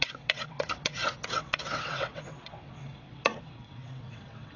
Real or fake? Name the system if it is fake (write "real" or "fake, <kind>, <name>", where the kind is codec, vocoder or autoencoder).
fake, vocoder, WaveNeXt